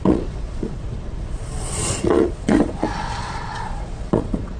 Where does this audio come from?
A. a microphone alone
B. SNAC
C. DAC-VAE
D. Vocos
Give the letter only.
D